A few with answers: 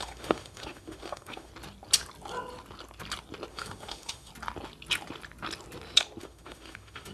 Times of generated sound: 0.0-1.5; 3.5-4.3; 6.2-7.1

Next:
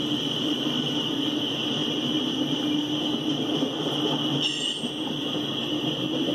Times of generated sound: 0.0-0.9; 1.8-2.3

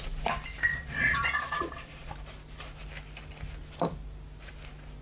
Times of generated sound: 0.7-2.1

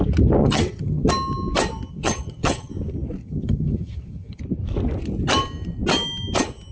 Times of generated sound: 0.4-1.1; 1.9-2.7; 3.2-4.4

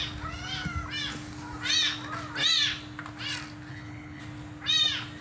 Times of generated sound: 3.7-4.2

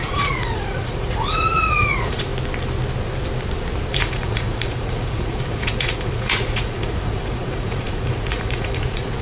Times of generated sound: 0.0-2.3; 3.9-9.2